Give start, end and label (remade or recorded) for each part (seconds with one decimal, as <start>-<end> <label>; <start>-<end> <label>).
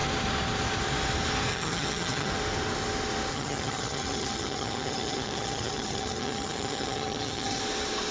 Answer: 0.0-1.5 recorded; 1.5-2.3 remade; 2.3-3.3 recorded; 3.3-7.6 remade; 7.6-8.1 recorded